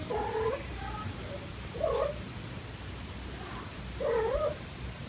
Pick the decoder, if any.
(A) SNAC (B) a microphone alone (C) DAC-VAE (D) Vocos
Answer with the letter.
B